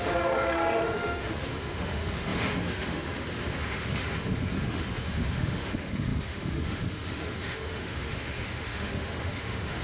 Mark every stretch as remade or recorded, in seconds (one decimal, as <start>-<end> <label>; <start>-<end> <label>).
0.0-9.8 remade